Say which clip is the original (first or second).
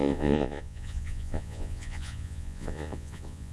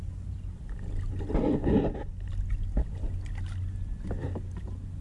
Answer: second